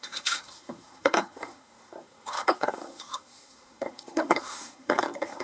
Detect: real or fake fake